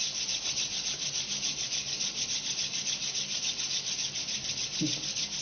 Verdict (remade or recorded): recorded